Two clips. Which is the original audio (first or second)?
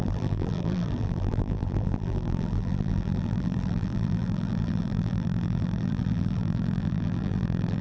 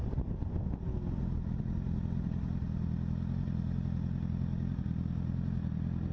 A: second